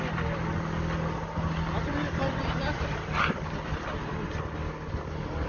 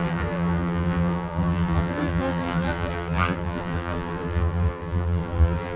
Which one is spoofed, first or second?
second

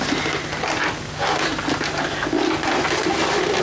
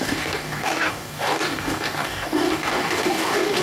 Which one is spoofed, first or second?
second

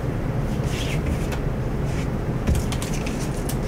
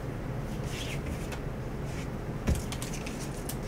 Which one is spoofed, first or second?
first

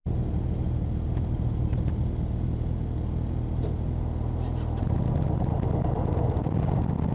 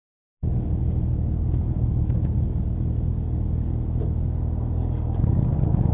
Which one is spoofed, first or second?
second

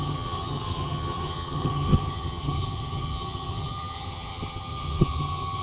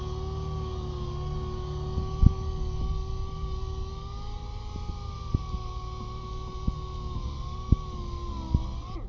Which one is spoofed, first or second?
first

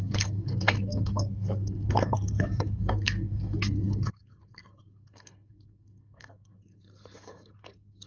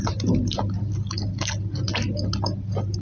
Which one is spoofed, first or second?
first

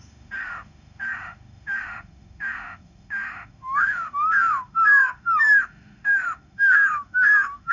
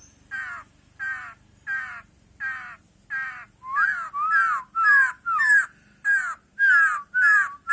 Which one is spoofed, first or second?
first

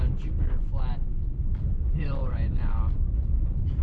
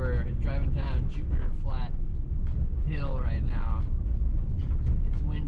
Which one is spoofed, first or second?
first